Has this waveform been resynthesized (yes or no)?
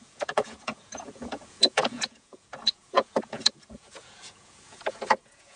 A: yes